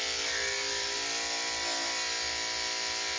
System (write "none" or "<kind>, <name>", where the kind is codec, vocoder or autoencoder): none